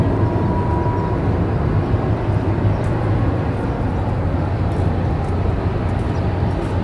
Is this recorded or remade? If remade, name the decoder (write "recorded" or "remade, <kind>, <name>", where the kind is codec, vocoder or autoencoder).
recorded